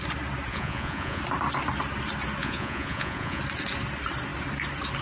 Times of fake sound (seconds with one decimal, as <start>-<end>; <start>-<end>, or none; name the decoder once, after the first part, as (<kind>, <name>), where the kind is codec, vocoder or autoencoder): 0.5-1.2 (vocoder, Vocos); 2.4-3.4